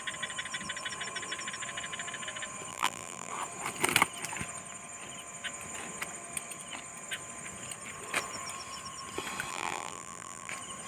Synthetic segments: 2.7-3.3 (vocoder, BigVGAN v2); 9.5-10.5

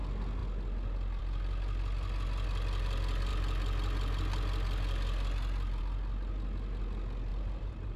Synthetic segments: 7.3-8.0 (vocoder, BigVGAN v2)